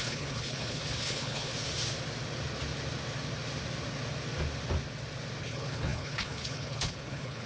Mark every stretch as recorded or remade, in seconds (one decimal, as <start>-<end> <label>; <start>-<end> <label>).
0.0-1.5 remade; 1.5-5.4 recorded; 5.4-7.5 remade